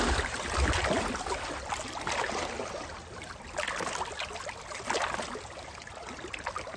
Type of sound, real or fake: real